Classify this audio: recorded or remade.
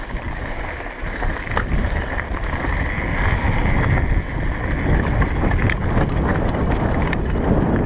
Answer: recorded